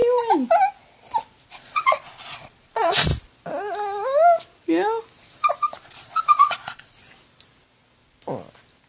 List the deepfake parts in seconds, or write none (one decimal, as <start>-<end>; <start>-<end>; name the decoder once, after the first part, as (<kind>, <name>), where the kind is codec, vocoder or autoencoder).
1.5-3.1 (vocoder, Vocos); 5.8-7.0